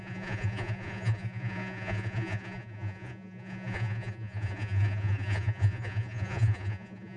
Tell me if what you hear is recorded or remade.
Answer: remade